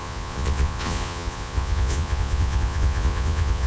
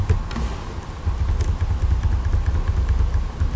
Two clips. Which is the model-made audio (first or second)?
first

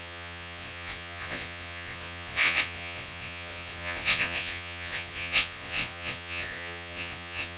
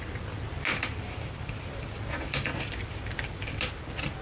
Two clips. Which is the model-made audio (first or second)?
first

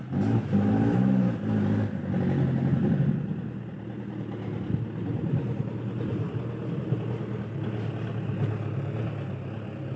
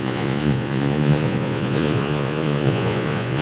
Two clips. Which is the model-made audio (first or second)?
second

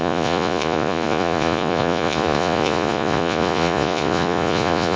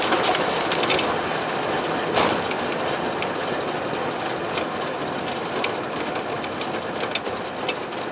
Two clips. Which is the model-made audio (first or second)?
first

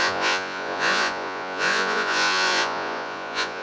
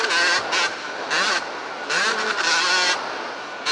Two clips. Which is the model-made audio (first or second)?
first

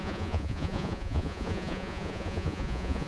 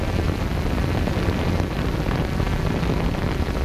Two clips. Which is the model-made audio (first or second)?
first